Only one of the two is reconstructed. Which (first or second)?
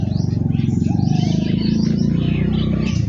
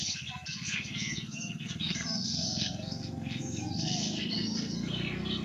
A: second